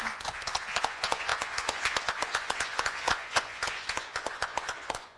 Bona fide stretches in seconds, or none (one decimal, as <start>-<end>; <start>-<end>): none